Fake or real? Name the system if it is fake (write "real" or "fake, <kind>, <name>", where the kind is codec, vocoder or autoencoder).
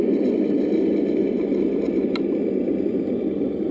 real